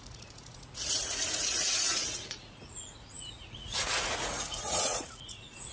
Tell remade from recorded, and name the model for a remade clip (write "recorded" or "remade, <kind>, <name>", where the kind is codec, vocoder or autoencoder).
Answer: remade, vocoder, Vocos